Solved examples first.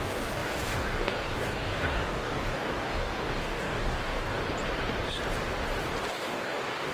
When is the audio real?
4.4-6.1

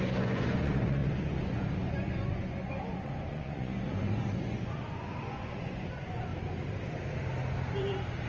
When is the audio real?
6.3-8.3

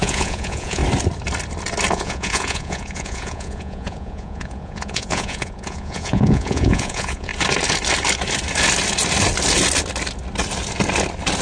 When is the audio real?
0.8-1.9; 7.3-11.4

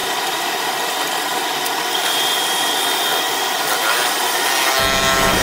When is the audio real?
0.0-5.4

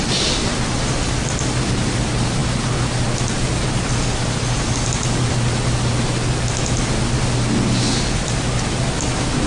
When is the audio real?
0.0-9.5